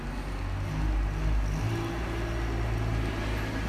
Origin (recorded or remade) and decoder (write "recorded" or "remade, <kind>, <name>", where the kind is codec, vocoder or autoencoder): recorded